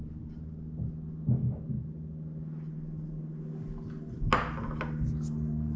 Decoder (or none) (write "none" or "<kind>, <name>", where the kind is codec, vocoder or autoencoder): none